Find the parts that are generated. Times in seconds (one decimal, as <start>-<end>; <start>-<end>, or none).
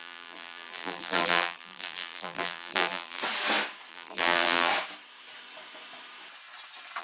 0.0-3.2; 3.9-4.7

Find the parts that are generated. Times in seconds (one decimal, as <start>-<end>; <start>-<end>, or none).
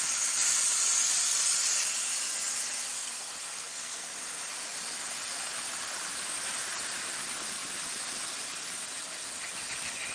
2.9-4.2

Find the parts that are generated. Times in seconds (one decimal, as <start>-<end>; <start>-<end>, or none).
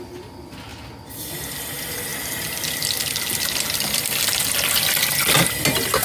none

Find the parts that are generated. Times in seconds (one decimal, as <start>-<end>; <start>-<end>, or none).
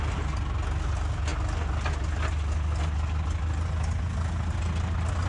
none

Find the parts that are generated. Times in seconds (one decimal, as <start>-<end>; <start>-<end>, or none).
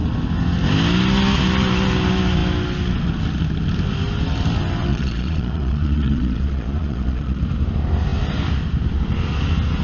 4.9-7.4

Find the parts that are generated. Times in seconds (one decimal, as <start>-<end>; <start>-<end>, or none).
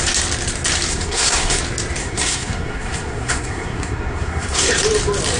0.9-1.6; 2.0-4.7